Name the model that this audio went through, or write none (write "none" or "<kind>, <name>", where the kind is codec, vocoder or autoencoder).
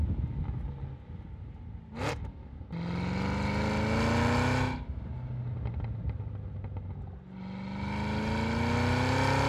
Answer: none